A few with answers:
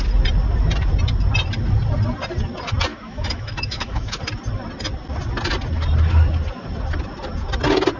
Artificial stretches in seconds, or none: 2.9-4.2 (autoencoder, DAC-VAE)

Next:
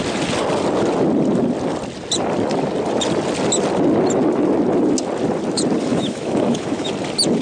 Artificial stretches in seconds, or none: 5.9-6.9 (autoencoder, DAC-VAE)

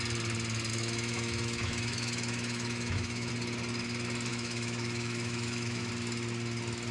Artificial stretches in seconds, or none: 0.7-3.3 (autoencoder, DAC-VAE); 4.3-5.9

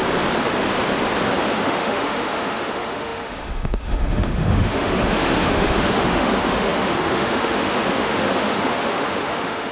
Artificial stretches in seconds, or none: 1.5-9.7 (autoencoder, DAC-VAE)

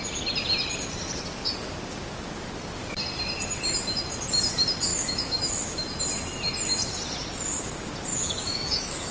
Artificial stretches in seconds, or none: 4.9-6.0 (autoencoder, DAC-VAE); 8.1-9.1

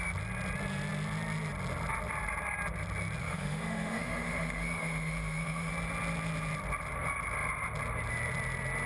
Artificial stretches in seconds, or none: 3.2-5.7 (autoencoder, DAC-VAE)

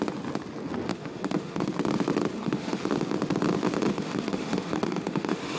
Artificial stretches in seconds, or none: 0.9-1.7 (autoencoder, DAC-VAE); 2.3-2.8; 3.9-5.6